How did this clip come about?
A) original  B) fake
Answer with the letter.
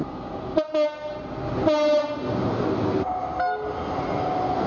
A